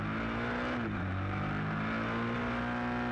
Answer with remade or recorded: recorded